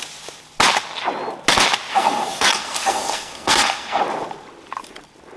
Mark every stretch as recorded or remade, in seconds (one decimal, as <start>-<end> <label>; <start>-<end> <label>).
0.0-1.9 recorded; 1.9-4.0 remade; 4.0-5.4 recorded

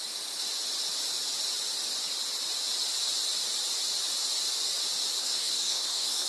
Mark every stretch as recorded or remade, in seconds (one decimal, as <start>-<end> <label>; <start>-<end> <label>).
0.0-5.2 recorded; 5.2-6.3 remade